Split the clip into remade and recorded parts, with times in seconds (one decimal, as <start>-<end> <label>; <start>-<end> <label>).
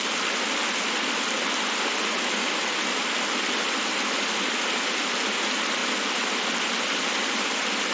0.0-5.8 recorded; 5.8-7.1 remade; 7.1-7.9 recorded